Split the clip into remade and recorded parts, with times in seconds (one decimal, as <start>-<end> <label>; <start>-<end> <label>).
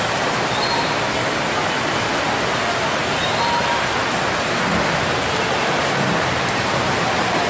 0.0-2.1 remade; 2.1-5.8 recorded; 5.8-7.5 remade